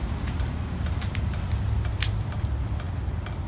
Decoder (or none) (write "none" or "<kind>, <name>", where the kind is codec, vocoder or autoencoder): none